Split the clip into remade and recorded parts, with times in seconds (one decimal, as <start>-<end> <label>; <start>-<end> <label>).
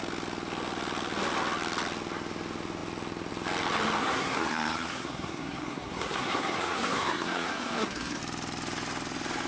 0.0-4.0 recorded; 4.0-8.2 remade; 8.2-9.5 recorded